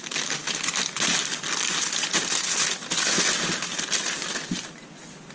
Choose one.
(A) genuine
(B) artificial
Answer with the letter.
A